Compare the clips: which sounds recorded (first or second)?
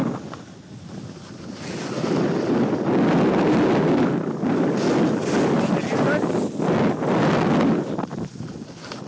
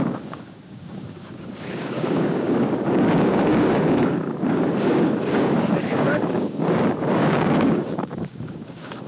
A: first